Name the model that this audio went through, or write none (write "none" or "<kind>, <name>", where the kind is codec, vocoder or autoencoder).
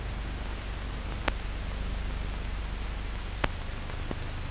none